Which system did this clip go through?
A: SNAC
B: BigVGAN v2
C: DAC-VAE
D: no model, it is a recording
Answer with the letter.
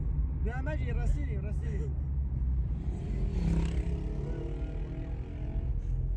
D